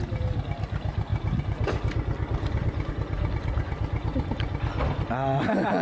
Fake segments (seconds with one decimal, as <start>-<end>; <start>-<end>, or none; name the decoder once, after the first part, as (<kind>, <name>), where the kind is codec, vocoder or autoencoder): none